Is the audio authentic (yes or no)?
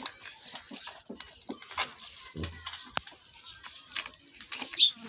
yes